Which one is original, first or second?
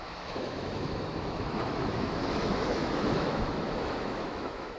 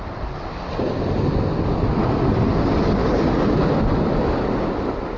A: second